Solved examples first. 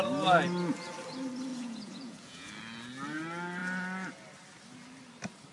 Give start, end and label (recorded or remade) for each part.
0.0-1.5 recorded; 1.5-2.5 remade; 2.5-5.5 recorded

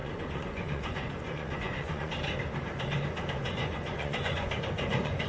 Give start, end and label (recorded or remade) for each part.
0.0-2.1 remade; 2.1-3.4 recorded; 3.4-5.3 remade

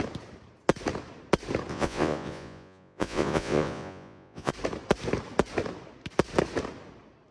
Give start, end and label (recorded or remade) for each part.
0.0-1.7 recorded; 1.7-4.5 remade; 4.5-7.3 recorded